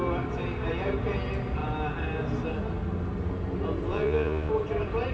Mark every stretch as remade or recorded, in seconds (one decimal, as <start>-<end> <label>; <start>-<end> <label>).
0.0-3.9 recorded; 3.9-4.5 remade; 4.5-5.1 recorded